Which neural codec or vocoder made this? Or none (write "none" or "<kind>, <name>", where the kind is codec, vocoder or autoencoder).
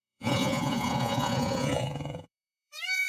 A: vocoder, Vocos